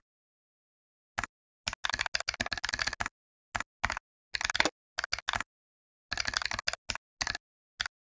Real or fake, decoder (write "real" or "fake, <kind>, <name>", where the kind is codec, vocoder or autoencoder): real